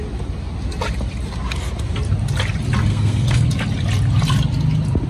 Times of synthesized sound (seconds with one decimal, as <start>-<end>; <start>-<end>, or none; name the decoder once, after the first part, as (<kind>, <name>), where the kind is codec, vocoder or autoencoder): 2.9-3.5 (codec, SNAC)